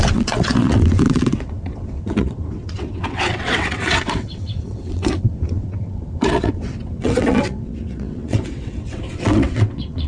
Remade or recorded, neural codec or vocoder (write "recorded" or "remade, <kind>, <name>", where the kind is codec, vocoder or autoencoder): remade, vocoder, WaveNeXt